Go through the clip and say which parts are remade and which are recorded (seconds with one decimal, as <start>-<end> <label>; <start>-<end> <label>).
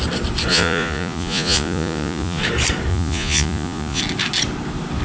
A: 0.0-0.5 recorded; 0.5-2.4 remade; 2.4-2.9 recorded; 2.9-4.0 remade; 4.0-5.0 recorded